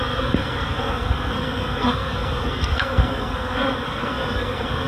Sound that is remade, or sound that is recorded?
remade